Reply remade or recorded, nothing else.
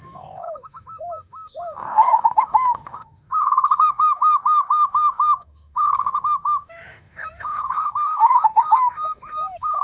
remade